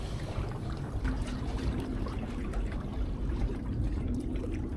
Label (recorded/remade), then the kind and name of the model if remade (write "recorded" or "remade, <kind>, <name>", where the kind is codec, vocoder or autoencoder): remade, vocoder, BigVGAN v2